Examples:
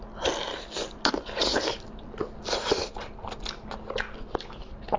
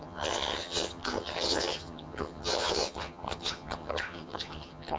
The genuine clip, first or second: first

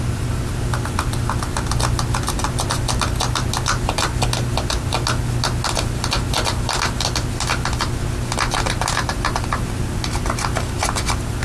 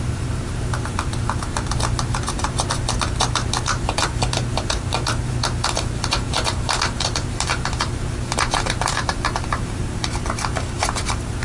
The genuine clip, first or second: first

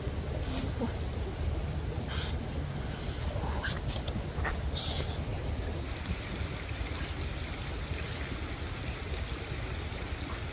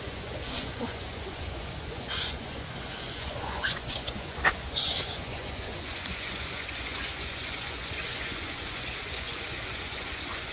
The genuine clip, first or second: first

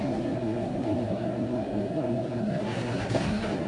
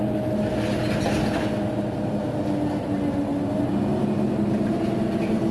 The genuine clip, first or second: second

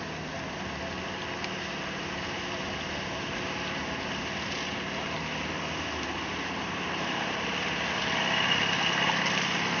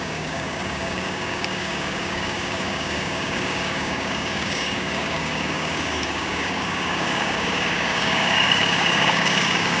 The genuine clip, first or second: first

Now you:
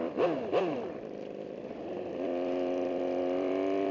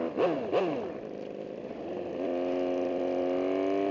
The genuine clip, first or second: second